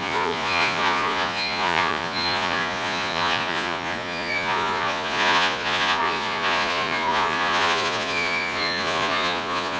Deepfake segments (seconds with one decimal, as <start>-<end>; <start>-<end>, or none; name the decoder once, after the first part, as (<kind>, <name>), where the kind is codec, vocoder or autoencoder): 0.0-9.8 (vocoder, Vocos)

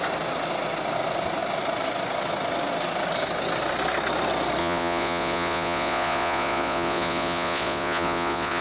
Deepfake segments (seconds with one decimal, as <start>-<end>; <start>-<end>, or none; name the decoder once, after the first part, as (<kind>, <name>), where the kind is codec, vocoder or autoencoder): 4.6-8.6 (vocoder, Vocos)

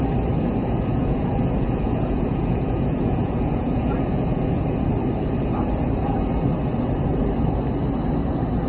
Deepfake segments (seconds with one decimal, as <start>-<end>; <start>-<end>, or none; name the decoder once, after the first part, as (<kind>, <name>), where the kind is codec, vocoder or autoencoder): 0.6-4.9 (vocoder, Vocos)

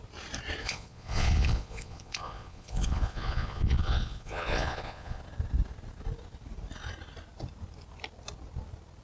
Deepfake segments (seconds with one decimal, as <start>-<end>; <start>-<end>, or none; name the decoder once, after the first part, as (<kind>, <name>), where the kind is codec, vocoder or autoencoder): 0.6-5.2 (vocoder, Vocos)

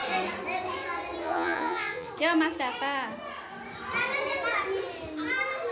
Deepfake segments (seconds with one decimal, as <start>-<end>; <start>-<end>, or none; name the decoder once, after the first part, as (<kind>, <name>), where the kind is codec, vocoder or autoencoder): 1.2-2.1 (vocoder, Vocos)

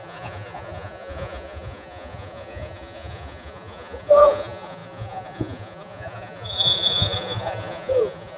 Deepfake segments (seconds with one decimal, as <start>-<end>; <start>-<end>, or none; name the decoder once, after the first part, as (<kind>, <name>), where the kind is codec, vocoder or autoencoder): 0.0-8.4 (vocoder, Vocos)

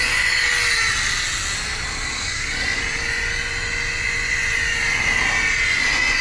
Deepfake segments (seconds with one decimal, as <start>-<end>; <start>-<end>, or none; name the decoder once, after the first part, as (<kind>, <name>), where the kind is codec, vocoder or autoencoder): 0.0-0.5 (vocoder, Vocos); 2.1-5.0; 5.7-6.2

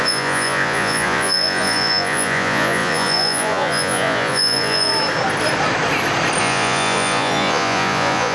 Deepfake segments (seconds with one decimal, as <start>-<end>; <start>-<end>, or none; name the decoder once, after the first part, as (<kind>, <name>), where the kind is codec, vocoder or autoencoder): 0.0-4.9 (vocoder, Vocos); 6.4-8.3